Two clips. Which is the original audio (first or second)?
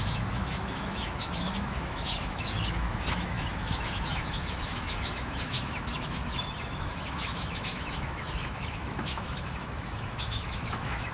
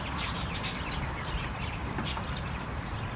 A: second